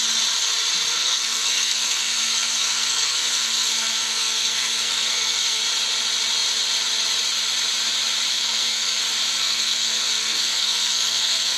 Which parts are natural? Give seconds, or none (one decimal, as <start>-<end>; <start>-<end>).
0.0-0.9; 5.6-8.3; 9.0-9.4